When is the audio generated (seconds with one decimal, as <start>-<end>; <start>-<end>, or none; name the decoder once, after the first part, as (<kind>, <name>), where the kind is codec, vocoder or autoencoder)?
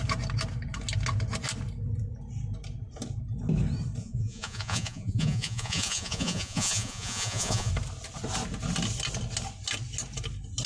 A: 4.0-7.7 (vocoder, Vocos)